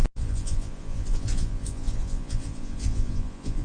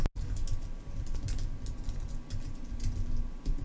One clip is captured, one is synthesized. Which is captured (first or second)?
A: second